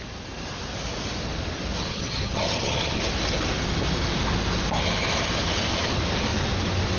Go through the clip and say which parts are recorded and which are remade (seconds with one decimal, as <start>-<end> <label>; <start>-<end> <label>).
0.0-1.9 recorded; 1.9-3.0 remade; 3.0-7.0 recorded